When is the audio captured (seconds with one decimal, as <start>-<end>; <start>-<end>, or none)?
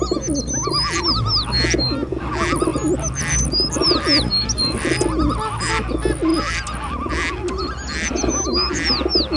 0.0-9.4